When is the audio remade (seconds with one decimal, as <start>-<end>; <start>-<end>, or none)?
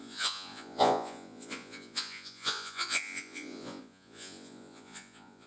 0.0-5.5